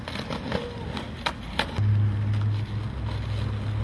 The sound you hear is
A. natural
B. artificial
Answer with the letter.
A